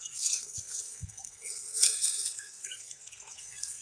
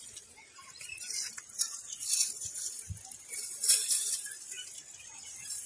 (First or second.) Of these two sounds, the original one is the second